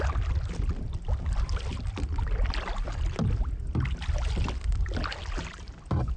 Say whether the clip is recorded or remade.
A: recorded